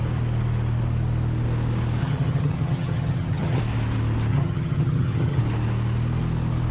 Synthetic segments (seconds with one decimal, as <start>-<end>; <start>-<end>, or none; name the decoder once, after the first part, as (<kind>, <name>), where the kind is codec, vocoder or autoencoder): 2.0-3.6 (vocoder, HiFi-GAN); 4.3-5.4